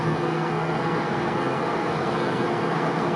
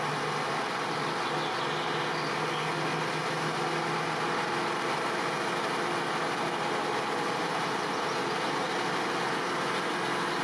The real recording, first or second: second